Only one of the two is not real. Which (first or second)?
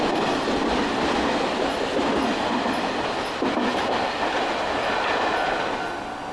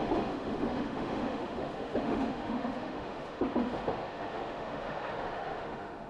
second